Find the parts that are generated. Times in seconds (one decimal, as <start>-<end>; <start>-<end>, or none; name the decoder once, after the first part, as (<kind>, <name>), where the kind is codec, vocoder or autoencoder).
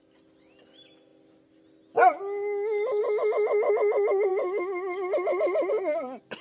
none